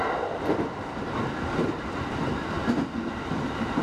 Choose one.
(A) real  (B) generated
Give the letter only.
A